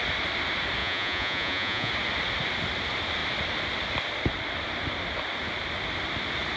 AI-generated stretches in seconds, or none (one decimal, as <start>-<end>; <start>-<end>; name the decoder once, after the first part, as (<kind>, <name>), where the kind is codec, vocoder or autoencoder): 0.8-1.9 (vocoder, Vocos)